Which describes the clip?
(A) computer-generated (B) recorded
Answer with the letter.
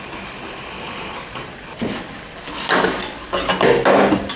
B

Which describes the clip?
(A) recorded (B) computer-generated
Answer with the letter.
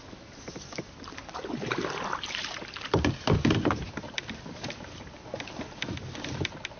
A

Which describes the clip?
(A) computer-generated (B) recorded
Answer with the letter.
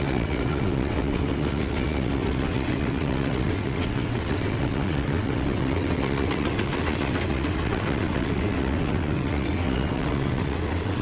A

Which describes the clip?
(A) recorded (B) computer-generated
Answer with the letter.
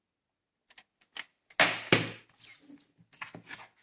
A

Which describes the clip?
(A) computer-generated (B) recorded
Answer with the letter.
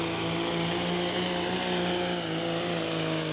B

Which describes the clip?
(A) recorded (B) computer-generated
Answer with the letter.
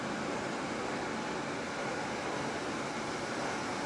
A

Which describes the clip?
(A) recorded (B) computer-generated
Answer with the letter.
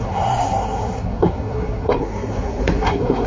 B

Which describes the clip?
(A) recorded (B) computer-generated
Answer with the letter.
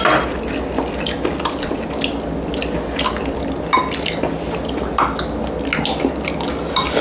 A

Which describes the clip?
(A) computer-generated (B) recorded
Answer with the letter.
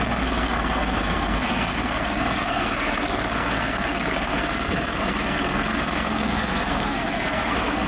A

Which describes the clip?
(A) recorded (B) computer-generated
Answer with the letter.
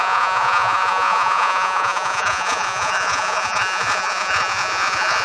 B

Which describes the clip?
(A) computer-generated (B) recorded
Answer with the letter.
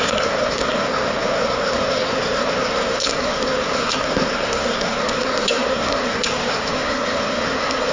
A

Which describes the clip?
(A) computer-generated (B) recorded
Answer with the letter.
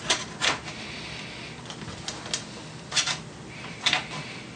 B